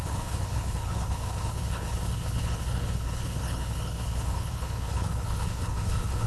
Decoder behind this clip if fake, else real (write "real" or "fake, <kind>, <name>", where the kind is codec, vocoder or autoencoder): fake, codec, HILCodec